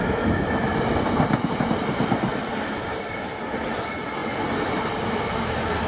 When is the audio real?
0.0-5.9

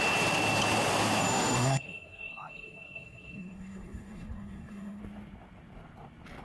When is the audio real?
0.0-1.2; 5.0-6.4

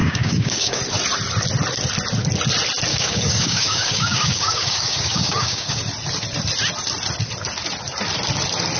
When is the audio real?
0.8-2.9; 5.8-8.8

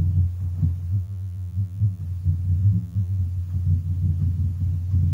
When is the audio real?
0.0-0.9; 2.0-2.6; 3.2-5.1

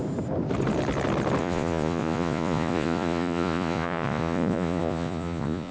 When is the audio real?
0.0-1.4